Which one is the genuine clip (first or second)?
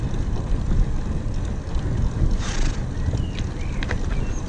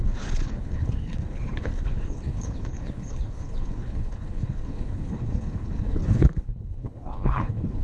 first